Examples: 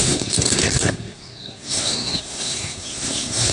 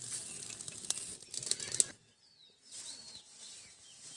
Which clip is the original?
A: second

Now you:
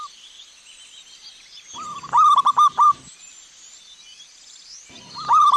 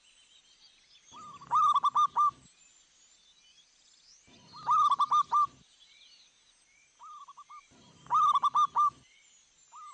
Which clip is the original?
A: second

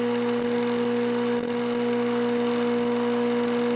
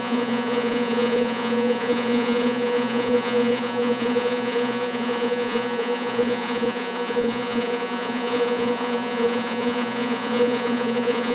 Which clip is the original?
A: first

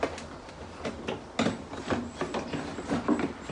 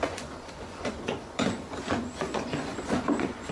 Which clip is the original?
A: first